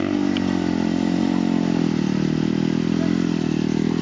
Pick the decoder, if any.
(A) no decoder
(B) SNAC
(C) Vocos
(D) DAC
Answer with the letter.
A